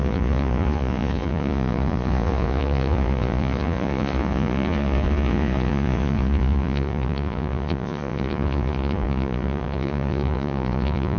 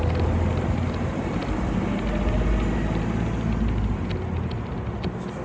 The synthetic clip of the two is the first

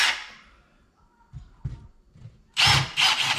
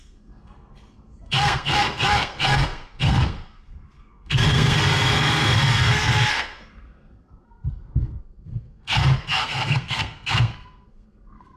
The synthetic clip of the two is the second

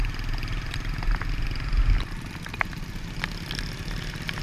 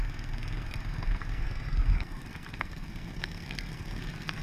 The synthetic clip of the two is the second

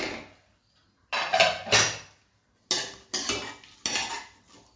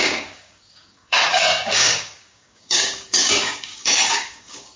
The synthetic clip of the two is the second